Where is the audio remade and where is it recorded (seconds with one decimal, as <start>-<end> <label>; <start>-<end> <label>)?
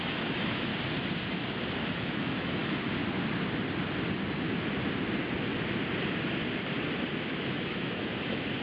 0.0-0.7 remade; 0.7-1.9 recorded; 1.9-2.6 remade; 2.6-7.3 recorded; 7.3-8.6 remade